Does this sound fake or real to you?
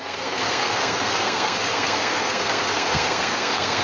fake